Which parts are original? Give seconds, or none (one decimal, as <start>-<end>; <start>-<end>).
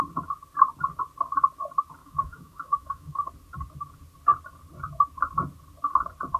0.0-2.0; 3.3-6.4